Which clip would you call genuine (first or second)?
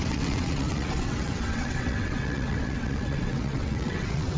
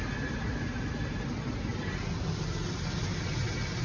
second